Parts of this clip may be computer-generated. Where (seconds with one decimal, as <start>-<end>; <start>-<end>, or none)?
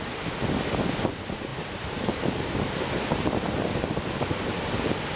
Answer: 1.5-3.7